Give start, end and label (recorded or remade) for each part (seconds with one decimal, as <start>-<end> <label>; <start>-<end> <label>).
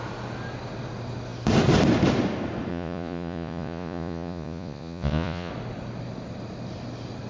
0.0-2.7 recorded; 2.7-5.5 remade; 5.5-7.3 recorded